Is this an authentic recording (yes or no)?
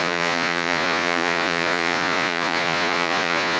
no